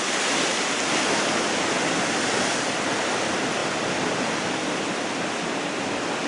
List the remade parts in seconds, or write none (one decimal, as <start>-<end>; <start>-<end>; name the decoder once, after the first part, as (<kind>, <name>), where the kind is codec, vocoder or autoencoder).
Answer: 3.6-4.8 (vocoder, BigVGAN v2)